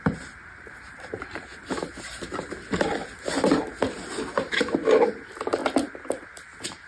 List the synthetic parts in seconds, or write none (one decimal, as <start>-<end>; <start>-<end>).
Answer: 0.0-1.5; 5.0-5.6